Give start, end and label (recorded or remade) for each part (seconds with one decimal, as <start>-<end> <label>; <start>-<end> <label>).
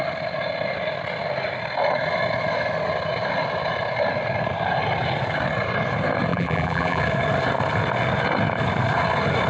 0.0-6.3 recorded; 6.3-7.0 remade; 7.0-9.5 recorded